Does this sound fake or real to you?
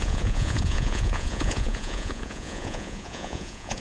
fake